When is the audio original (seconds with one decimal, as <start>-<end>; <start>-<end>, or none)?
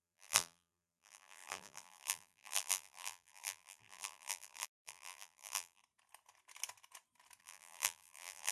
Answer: 5.8-7.4